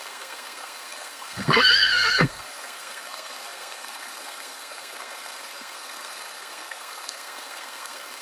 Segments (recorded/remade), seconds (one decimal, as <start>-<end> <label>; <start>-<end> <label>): 0.0-8.2 remade